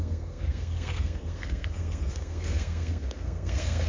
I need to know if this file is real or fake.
fake